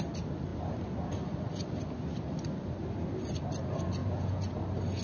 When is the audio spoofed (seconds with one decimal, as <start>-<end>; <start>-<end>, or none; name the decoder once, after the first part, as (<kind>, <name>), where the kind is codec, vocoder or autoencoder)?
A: 4.0-4.6 (vocoder, Vocos)